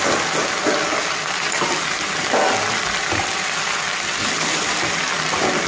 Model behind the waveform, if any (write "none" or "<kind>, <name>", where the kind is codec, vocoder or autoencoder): none